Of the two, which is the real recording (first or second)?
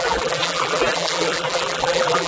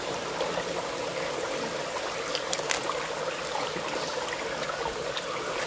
second